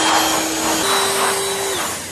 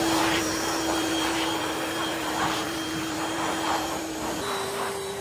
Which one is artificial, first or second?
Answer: second